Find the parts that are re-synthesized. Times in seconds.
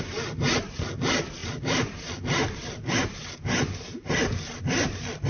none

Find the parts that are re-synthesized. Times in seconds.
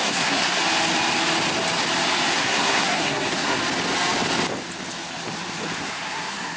0.0-0.6 (codec, SNAC); 2.3-3.6; 5.8-6.6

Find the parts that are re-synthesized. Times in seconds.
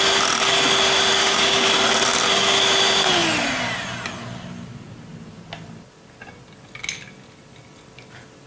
1.2-1.7 (codec, DAC)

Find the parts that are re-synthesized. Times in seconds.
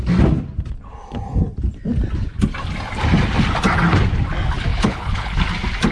4.7-5.4 (codec, HILCodec)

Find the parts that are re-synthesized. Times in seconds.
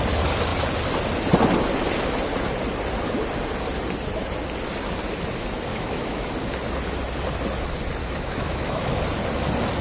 5.7-6.3 (autoencoder, DAC-VAE); 8.0-9.0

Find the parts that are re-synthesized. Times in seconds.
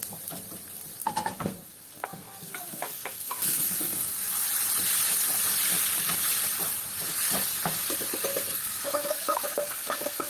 1.0-4.3 (codec, SNAC); 8.3-10.3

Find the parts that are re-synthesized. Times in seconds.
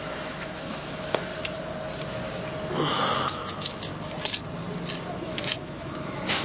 0.0-1.3 (autoencoder, DAC-VAE); 2.7-3.9; 5.1-6.4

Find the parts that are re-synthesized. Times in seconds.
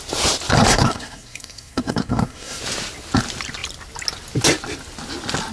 0.7-2.6 (codec, SNAC)